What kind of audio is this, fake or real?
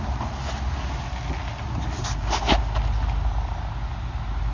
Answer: real